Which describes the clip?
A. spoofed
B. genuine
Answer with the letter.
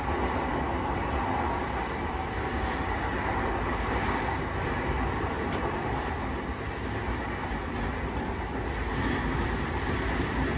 B